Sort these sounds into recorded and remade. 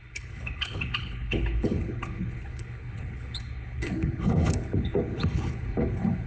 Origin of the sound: remade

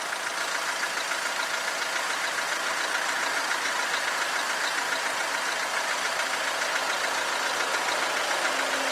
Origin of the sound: recorded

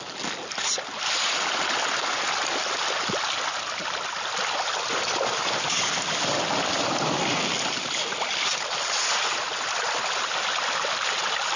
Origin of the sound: recorded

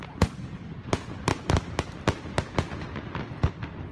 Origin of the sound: recorded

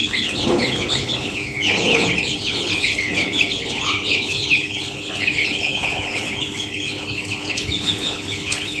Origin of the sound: remade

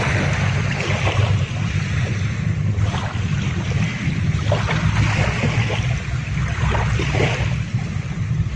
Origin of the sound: remade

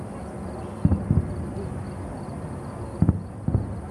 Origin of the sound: recorded